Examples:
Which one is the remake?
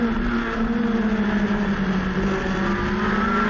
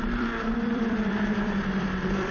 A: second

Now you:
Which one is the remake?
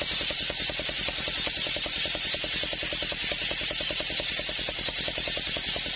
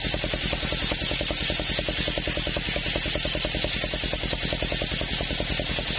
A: first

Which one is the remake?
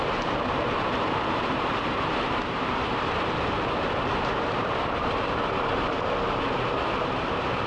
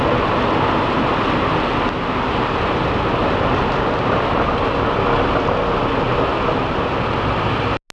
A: first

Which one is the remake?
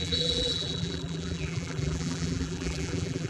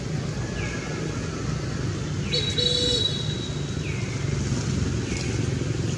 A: first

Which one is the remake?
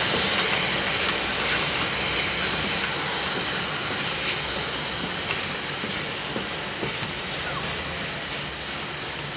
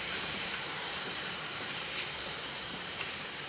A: second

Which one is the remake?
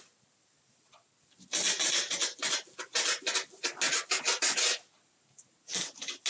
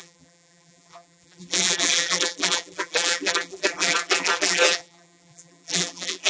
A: second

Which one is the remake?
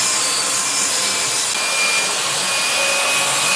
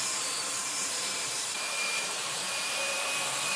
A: second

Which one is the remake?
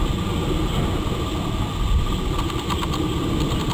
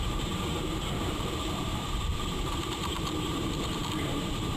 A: second